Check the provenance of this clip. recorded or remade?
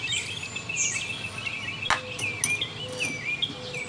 recorded